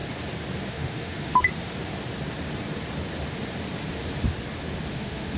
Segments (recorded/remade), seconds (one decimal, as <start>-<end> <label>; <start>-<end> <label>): 0.0-0.7 recorded; 0.7-1.7 remade; 1.7-4.9 recorded; 4.9-5.4 remade